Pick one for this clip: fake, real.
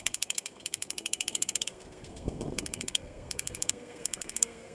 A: fake